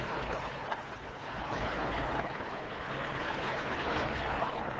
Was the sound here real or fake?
fake